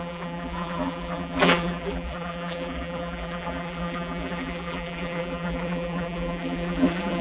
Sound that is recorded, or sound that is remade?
remade